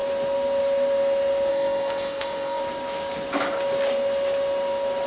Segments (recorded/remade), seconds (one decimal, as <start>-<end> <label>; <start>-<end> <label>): 0.0-1.5 recorded; 1.5-2.6 remade; 2.6-5.1 recorded